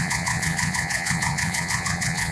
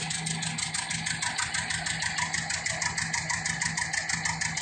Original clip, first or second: second